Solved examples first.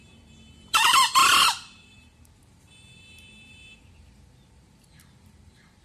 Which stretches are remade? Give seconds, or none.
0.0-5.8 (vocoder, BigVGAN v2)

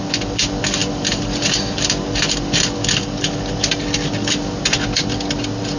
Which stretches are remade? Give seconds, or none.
0.0-5.8 (vocoder, BigVGAN v2)

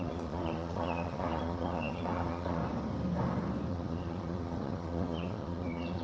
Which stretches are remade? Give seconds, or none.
0.0-2.6 (vocoder, Vocos); 3.7-6.0

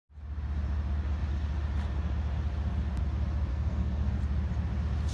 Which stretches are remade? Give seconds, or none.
3.5-4.2 (codec, SNAC)

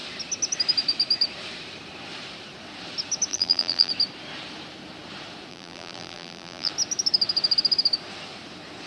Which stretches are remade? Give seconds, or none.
3.3-3.9 (vocoder, BigVGAN v2); 5.5-6.7

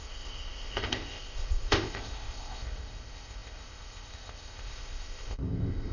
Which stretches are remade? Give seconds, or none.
0.0-5.9 (codec, ZipCodec)